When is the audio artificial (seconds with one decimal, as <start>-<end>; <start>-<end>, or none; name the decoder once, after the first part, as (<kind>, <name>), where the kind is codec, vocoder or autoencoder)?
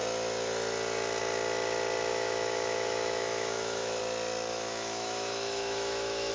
2.1-4.0 (autoencoder, DAC-VAE); 4.5-6.3